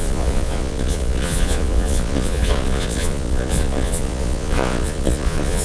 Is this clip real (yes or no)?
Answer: no